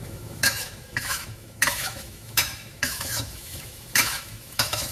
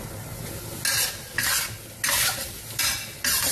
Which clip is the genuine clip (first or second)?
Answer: second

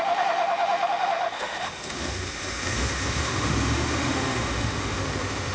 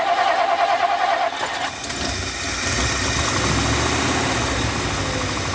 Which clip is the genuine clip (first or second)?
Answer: second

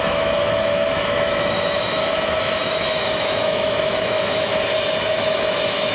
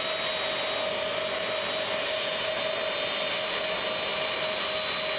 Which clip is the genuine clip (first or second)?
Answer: second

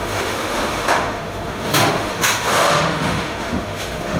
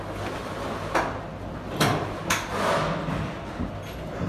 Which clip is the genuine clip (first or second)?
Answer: second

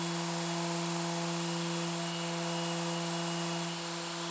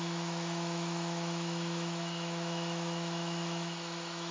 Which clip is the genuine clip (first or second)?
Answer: first